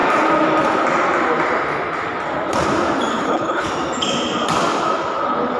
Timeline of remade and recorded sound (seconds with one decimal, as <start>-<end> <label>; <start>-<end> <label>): 0.0-3.1 recorded; 3.1-3.7 remade; 3.7-5.6 recorded